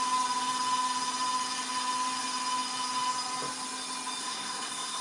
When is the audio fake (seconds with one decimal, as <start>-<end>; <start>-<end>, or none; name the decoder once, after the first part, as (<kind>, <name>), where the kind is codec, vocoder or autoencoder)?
4.2-5.0 (codec, SNAC)

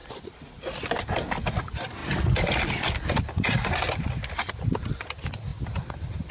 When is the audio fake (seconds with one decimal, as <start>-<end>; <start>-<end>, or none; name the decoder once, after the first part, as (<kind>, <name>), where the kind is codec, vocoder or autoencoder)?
0.0-1.0 (vocoder, BigVGAN v2); 5.5-6.3

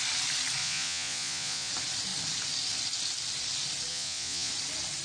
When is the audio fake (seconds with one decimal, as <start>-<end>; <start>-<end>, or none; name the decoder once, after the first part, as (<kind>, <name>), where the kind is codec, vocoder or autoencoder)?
0.6-1.7 (vocoder, Vocos); 3.9-4.5

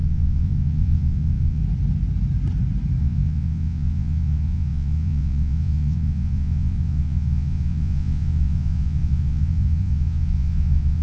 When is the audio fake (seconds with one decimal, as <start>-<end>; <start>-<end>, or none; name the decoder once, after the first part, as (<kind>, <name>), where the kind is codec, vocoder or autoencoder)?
0.0-1.6 (vocoder, Vocos); 3.0-11.0